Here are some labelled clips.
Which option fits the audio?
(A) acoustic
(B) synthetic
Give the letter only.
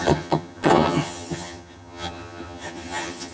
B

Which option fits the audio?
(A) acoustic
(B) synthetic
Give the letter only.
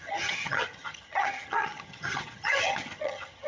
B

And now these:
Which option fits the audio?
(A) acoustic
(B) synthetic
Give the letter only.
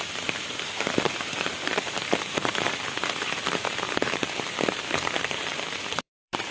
B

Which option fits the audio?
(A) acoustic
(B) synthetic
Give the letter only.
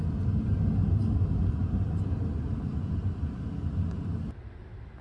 A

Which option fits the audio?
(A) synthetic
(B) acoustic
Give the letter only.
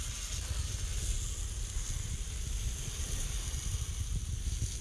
B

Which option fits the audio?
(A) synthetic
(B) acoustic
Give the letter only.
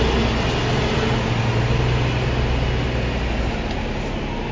B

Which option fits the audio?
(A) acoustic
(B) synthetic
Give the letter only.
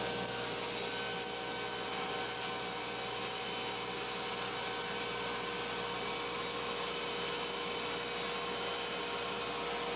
A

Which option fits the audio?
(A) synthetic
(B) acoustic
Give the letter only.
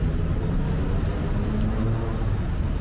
B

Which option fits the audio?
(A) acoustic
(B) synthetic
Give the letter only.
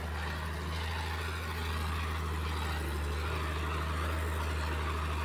A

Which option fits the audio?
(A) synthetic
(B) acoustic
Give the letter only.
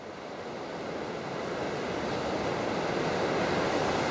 B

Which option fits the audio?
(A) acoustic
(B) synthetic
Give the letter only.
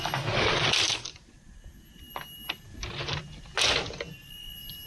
A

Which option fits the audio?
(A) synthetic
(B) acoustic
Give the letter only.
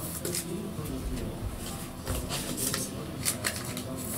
B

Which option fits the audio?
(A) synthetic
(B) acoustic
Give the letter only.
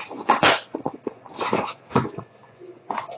A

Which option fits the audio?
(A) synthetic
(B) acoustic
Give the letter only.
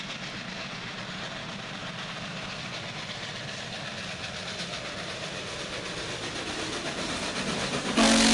B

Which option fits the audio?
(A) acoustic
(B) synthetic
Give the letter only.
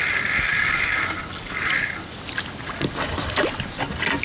A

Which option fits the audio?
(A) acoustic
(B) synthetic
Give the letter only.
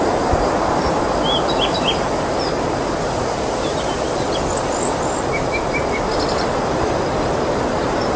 A